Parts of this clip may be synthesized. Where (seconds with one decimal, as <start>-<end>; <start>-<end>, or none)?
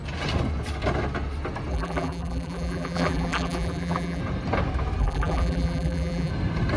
1.7-4.2; 5.0-6.3